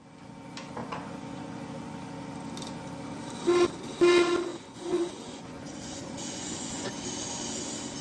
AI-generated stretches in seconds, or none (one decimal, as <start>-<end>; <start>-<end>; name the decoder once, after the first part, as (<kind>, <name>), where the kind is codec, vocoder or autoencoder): 0.8-1.6 (vocoder, Vocos); 4.5-6.9